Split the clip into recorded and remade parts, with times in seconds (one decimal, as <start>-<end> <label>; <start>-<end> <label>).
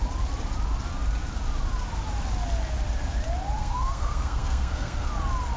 0.0-3.6 recorded; 3.6-5.1 remade; 5.1-5.6 recorded